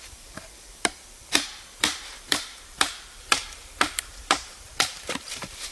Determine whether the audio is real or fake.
fake